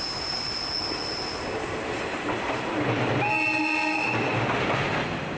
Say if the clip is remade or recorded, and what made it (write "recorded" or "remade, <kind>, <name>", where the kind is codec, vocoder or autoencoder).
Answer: recorded